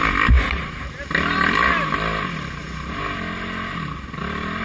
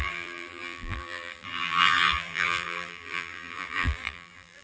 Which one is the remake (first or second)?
second